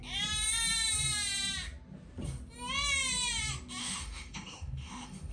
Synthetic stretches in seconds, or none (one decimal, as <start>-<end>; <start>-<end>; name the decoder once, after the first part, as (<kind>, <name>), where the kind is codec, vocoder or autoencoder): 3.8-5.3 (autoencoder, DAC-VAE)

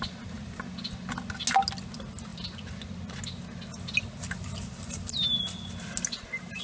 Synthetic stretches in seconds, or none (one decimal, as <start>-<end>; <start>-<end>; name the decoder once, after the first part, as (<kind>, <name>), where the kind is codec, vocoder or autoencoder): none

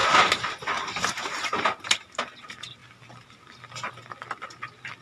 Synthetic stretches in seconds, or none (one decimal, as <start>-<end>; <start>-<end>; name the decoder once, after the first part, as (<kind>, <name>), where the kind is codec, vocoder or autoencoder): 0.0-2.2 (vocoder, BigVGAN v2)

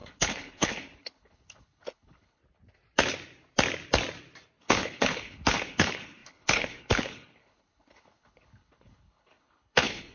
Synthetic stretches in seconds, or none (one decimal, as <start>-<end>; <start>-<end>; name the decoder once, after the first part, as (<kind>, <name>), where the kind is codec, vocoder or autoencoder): 0.0-2.4 (codec, HILCodec); 4.6-10.1

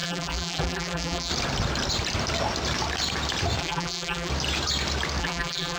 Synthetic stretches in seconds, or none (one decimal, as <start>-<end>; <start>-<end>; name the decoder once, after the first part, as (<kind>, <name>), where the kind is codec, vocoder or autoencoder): 0.0-1.3 (vocoder, BigVGAN v2); 3.6-4.3; 5.2-5.8